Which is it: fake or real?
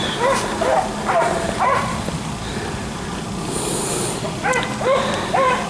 real